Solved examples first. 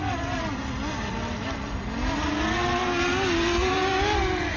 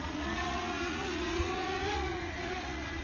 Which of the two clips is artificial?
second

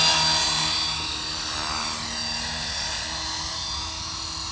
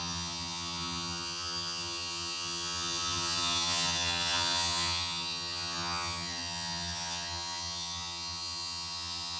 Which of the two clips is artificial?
second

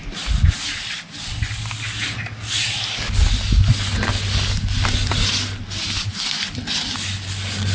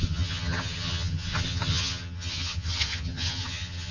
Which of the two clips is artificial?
second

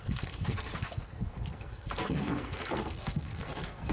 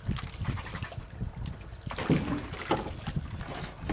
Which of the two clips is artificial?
first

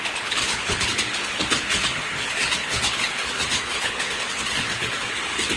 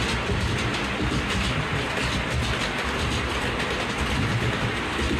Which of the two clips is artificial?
first